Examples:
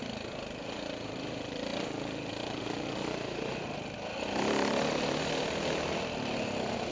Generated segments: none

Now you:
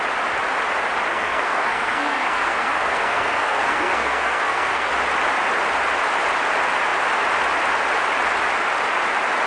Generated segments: 1.1-4.9

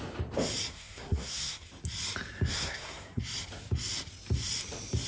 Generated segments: 0.7-1.7; 2.5-3.2

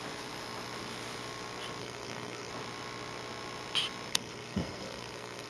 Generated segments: 1.8-2.5; 4.1-5.5

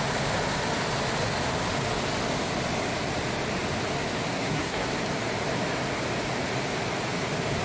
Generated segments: 4.3-4.9